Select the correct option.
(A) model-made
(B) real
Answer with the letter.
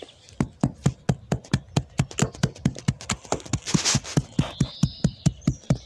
B